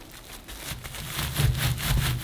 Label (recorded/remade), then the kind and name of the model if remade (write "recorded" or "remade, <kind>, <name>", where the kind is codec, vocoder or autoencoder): recorded